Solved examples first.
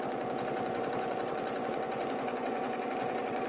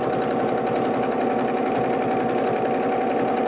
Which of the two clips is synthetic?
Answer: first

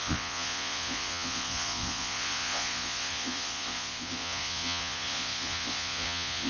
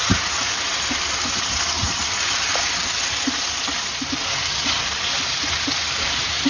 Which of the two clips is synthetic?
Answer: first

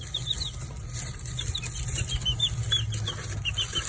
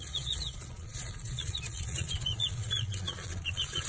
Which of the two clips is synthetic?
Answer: second